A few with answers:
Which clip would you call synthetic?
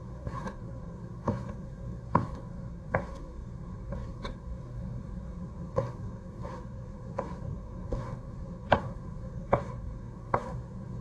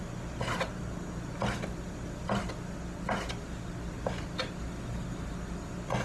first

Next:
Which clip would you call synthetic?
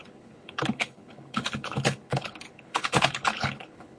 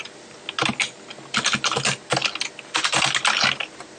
first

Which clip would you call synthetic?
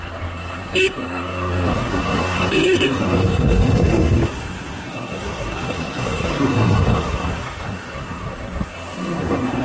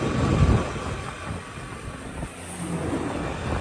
first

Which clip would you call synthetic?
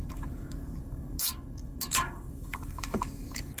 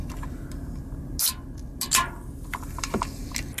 first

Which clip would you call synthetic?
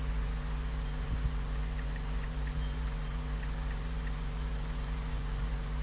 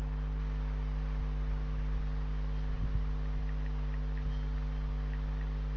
first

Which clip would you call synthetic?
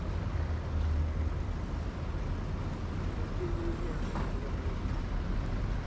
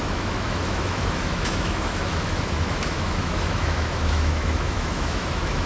second